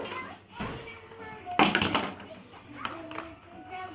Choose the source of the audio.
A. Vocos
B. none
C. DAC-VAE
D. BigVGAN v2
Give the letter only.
B